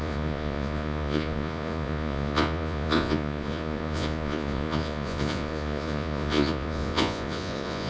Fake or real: fake